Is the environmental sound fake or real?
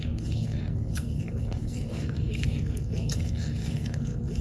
fake